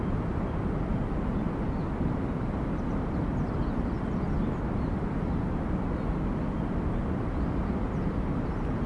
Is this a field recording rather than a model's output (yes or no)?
yes